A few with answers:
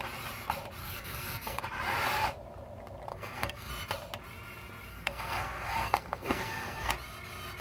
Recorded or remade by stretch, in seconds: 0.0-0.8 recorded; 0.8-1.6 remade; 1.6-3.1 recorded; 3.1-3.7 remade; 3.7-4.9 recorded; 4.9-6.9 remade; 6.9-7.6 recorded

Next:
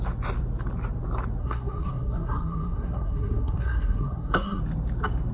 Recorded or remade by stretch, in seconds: 0.0-1.4 recorded; 1.4-4.6 remade; 4.6-5.3 recorded

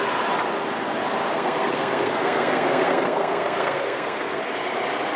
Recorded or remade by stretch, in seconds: 0.0-1.3 recorded; 1.3-4.4 remade; 4.4-5.2 recorded

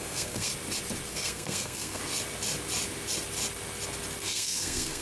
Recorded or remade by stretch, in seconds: 0.0-0.5 remade; 0.5-1.1 recorded; 1.1-2.0 remade; 2.0-4.2 recorded; 4.2-5.0 remade

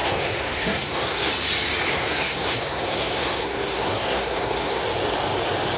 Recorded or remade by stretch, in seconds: 0.0-1.3 remade; 1.3-1.9 recorded; 1.9-4.8 remade; 4.8-5.8 recorded

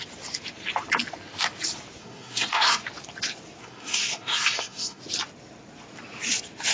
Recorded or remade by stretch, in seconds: 0.0-2.0 recorded; 2.0-2.8 remade; 2.8-3.6 recorded; 3.6-5.0 remade; 5.0-6.7 recorded